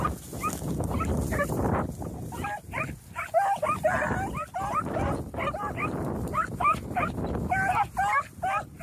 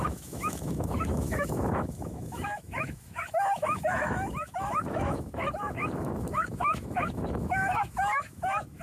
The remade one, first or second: second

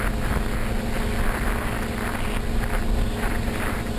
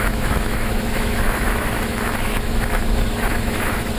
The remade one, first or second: second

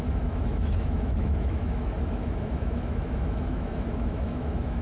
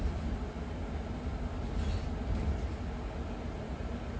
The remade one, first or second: first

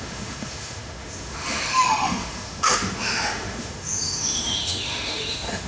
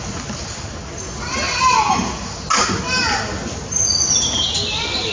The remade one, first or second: first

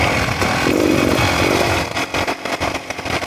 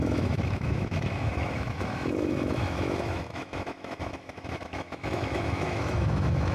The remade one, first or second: second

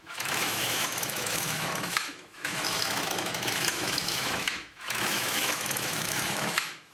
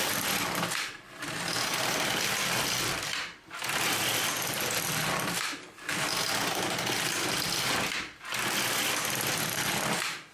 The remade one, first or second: first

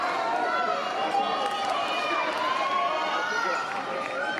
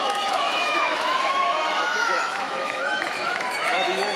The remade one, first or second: second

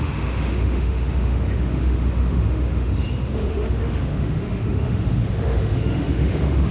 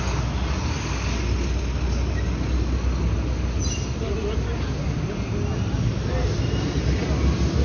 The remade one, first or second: first